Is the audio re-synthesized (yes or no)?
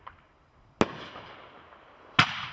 no